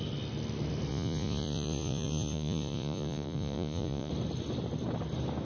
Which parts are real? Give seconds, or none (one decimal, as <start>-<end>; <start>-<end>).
0.0-0.9; 4.1-5.4